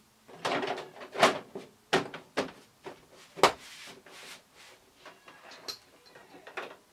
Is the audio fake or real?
real